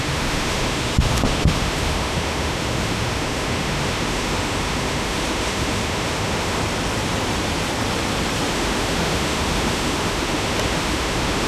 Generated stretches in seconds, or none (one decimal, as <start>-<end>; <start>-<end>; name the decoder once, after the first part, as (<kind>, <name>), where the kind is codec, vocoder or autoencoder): 0.0-6.6 (autoencoder, DAC-VAE); 8.5-11.5